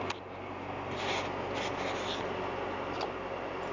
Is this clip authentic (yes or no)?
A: yes